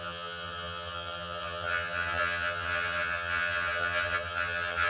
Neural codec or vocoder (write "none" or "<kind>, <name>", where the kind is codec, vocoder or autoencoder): vocoder, HiFi-GAN